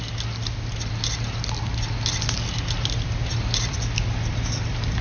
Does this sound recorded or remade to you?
recorded